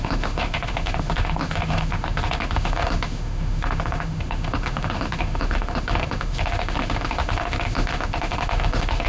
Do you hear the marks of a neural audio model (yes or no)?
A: yes